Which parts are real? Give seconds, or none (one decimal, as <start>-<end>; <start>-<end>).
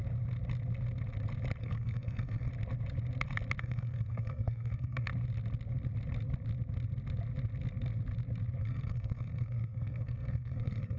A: 0.0-1.6; 2.5-3.6; 5.1-8.6